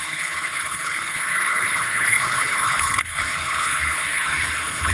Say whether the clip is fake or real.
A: fake